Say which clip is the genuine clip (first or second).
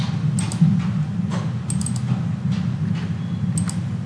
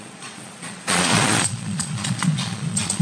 first